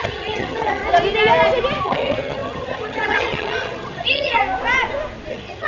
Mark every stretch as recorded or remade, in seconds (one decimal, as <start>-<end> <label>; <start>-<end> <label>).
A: 0.0-0.8 remade; 0.8-1.8 recorded; 1.8-4.4 remade; 4.4-5.3 recorded; 5.3-5.7 remade